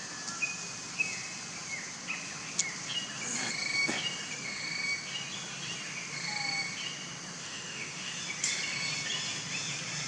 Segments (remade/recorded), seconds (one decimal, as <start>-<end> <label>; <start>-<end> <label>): 0.0-7.4 recorded; 7.4-8.1 remade; 8.1-10.1 recorded